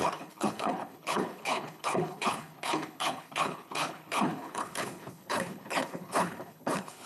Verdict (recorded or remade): remade